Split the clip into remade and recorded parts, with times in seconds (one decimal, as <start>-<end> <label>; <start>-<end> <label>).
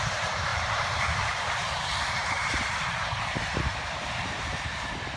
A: 0.0-5.2 remade